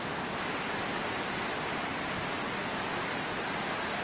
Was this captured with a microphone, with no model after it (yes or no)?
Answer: yes